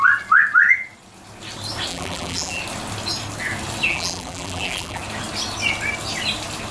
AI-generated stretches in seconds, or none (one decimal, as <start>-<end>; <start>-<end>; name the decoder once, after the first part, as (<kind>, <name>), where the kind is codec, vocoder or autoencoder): 1.9-2.6 (vocoder, BigVGAN v2); 3.9-5.0